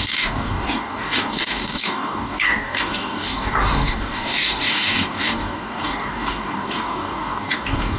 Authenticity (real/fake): fake